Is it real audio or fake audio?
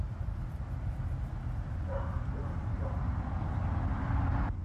real